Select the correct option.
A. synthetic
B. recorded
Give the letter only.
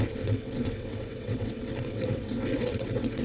A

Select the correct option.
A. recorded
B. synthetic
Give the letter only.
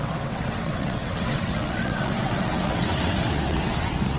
B